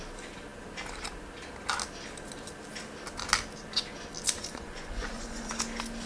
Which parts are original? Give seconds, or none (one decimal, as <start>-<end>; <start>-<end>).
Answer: 0.0-4.4; 5.5-6.1